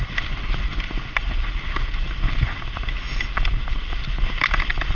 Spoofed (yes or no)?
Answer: no